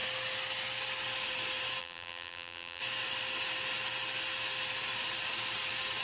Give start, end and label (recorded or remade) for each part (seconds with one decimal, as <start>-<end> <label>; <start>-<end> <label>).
0.0-1.8 recorded; 1.8-2.8 remade; 2.8-6.0 recorded